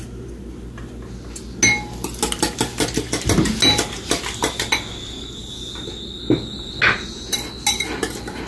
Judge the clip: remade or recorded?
recorded